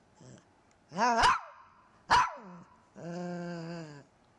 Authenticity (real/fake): real